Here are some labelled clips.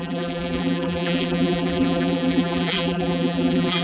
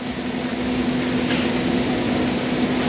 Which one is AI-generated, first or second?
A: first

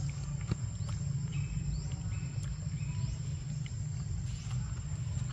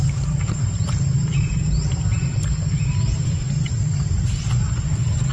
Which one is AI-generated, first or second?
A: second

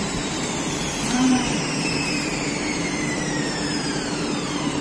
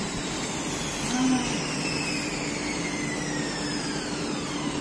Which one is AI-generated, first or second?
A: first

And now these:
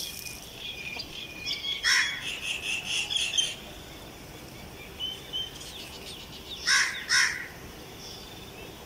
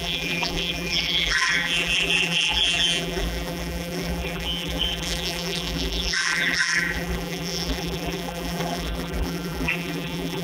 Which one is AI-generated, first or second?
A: second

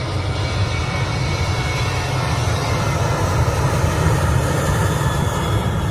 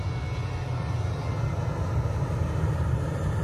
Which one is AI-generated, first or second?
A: first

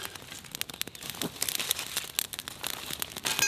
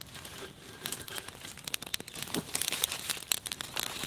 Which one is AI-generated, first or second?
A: second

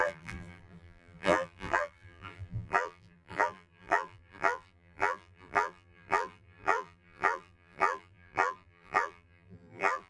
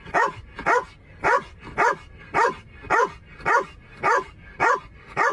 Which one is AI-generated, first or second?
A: first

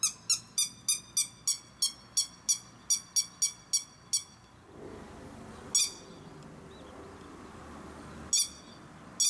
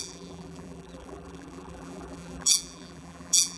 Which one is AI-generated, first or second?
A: second